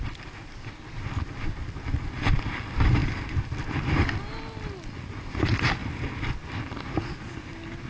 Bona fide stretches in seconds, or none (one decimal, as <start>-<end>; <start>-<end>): 0.0-7.9